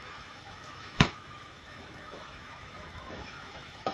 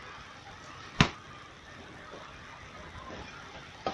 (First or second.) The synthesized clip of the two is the first